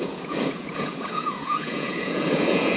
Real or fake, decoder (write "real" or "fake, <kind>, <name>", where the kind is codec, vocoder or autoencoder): fake, vocoder, Vocos